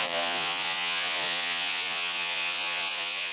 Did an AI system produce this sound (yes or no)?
yes